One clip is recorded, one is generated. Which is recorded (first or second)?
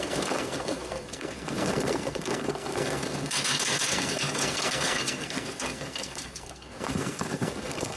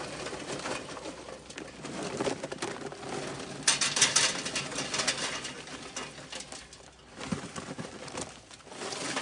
second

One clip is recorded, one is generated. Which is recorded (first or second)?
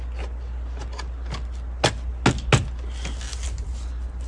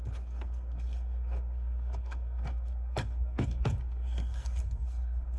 first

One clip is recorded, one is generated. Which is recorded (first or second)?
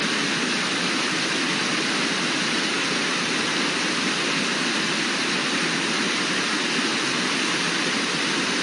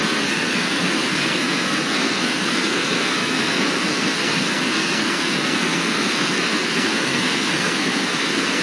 first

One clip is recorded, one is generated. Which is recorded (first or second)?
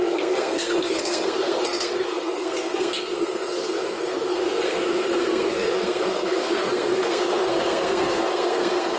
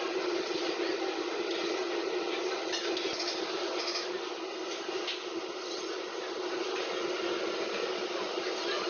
second